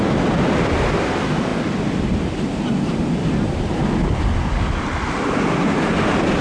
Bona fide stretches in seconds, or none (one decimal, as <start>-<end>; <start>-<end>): 0.0-6.4